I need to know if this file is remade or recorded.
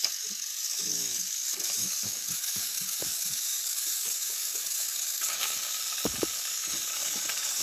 remade